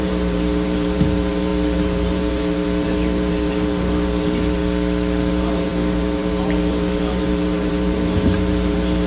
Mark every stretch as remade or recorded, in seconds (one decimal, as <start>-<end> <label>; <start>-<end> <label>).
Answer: 0.0-4.6 remade; 4.6-5.3 recorded; 5.3-9.1 remade